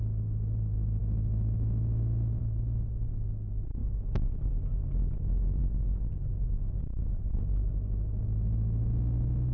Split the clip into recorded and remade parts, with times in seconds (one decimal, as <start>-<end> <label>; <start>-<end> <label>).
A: 0.0-9.5 recorded

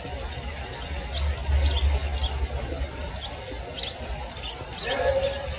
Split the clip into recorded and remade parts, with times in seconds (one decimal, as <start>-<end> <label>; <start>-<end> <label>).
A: 0.0-5.6 recorded

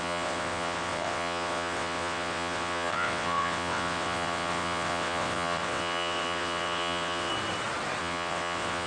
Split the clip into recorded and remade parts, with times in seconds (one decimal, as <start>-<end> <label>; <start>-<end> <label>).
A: 0.0-7.3 remade; 7.3-8.0 recorded; 8.0-8.9 remade